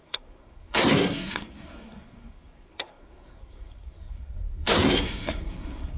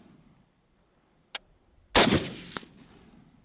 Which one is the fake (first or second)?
first